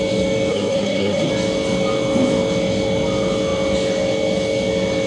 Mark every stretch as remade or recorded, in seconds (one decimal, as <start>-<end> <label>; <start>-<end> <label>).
0.0-0.5 recorded; 0.5-1.3 remade; 1.3-5.1 recorded